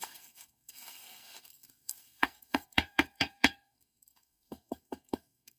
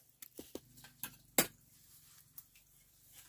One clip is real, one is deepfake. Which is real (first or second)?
second